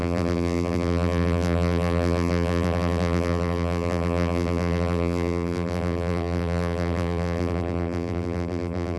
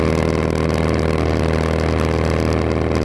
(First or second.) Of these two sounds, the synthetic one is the first